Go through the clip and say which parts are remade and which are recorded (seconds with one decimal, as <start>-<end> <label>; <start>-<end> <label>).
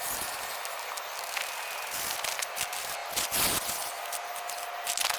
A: 0.0-5.2 recorded